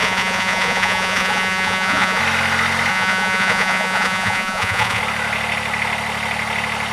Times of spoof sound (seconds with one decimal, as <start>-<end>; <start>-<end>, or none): 0.0-2.2; 2.9-5.0